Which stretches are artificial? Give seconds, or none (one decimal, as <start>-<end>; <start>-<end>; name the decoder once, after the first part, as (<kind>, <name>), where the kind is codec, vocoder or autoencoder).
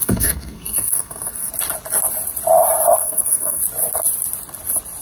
0.0-1.5 (codec, SNAC); 3.0-3.6